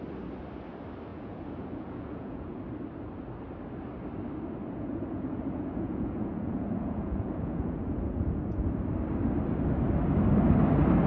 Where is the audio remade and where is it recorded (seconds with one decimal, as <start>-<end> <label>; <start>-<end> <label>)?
0.0-1.1 recorded; 1.1-2.6 remade; 2.6-4.6 recorded; 4.6-8.7 remade; 8.7-11.1 recorded